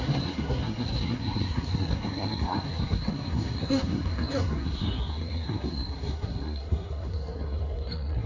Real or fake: fake